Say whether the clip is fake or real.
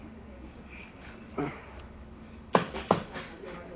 fake